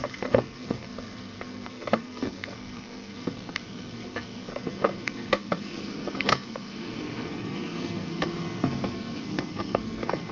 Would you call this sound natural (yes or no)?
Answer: no